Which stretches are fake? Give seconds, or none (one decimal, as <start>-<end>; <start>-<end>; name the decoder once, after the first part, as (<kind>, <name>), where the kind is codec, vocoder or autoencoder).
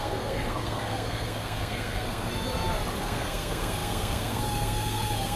0.0-2.3 (codec, SNAC); 3.0-5.4